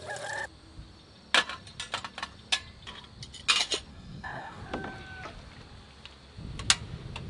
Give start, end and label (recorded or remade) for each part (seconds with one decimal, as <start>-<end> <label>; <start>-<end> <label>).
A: 0.0-3.9 recorded; 3.9-4.6 remade; 4.6-7.3 recorded